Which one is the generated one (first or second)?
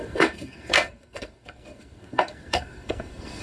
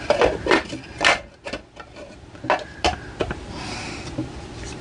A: first